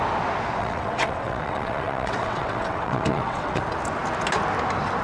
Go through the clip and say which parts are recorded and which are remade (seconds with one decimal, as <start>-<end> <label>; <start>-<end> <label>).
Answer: 0.0-0.6 recorded; 0.6-3.6 remade; 3.6-5.0 recorded